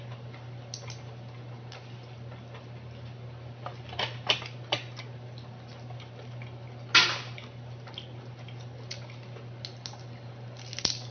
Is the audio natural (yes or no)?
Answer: yes